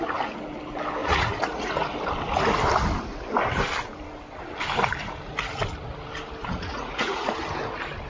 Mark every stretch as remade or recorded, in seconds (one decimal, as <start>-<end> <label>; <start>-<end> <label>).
0.0-1.0 recorded; 1.0-1.7 remade; 1.7-6.4 recorded; 6.4-7.3 remade; 7.3-8.1 recorded